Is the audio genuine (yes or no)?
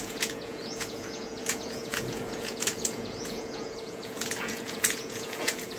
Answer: no